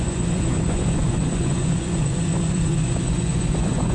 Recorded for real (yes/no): no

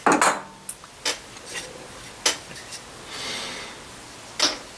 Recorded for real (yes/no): yes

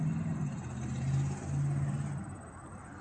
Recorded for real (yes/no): yes